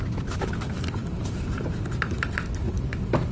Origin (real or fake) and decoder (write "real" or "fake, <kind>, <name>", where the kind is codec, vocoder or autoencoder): real